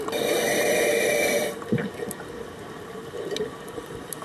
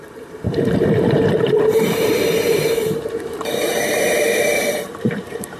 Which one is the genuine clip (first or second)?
first